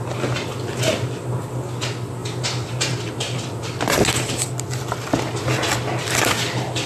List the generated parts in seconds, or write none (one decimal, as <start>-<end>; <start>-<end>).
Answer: none

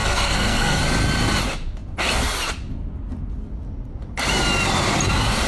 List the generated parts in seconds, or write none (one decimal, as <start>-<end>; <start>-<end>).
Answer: 0.0-0.8

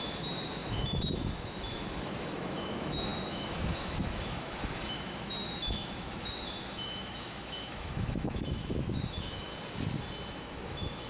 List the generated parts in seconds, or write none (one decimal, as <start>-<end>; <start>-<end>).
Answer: 0.0-9.5; 10.4-11.1